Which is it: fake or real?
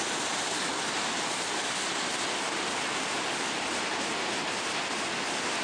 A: real